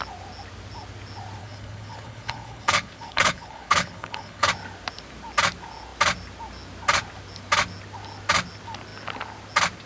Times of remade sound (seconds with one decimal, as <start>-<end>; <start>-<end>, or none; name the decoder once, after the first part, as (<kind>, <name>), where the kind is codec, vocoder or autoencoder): 1.4-4.5 (codec, HILCodec)